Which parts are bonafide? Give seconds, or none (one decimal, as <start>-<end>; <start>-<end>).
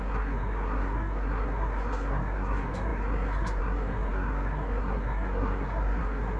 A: none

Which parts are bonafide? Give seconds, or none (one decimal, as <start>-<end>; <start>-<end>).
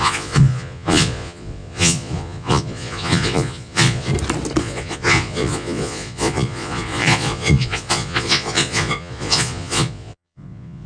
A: 4.1-4.6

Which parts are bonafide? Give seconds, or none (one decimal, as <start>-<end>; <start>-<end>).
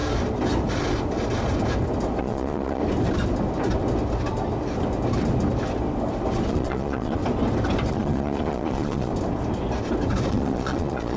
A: 0.0-2.2; 2.8-6.5; 7.2-7.9; 9.1-10.3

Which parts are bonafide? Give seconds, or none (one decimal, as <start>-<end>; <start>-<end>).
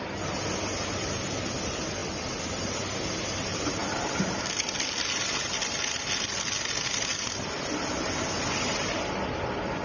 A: 0.0-9.8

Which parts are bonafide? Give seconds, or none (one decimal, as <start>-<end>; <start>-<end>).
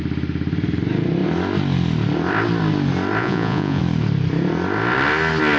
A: 0.0-3.2; 3.8-5.6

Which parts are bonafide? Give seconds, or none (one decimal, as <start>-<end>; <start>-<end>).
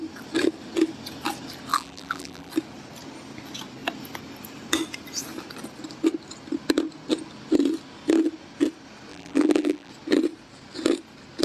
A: 0.0-1.7; 2.5-9.1; 9.9-11.4